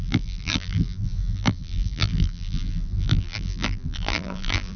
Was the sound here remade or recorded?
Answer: remade